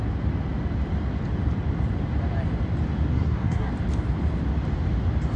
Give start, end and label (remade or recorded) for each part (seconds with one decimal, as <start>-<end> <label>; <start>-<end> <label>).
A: 0.0-3.1 recorded; 3.1-3.7 remade; 3.7-5.4 recorded

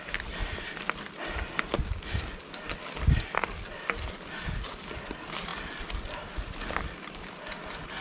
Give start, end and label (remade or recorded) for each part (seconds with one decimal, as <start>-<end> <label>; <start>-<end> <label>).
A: 0.0-8.0 recorded

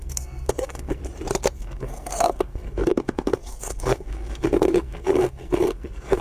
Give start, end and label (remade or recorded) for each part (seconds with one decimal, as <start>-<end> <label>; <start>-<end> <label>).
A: 0.0-1.0 remade; 1.0-1.5 recorded; 1.5-6.2 remade

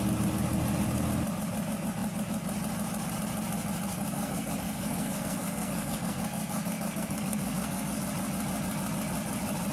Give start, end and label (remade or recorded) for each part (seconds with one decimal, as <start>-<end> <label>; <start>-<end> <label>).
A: 0.0-3.9 recorded; 3.9-8.0 remade; 8.0-9.7 recorded

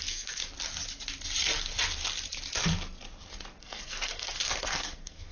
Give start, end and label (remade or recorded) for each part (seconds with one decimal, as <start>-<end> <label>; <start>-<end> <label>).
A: 0.0-0.4 remade; 0.4-3.6 recorded; 3.6-5.3 remade